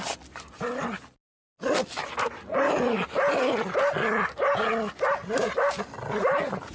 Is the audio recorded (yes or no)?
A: yes